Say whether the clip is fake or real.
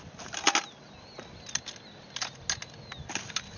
real